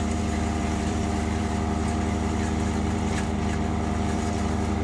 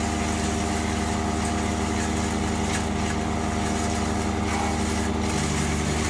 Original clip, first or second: second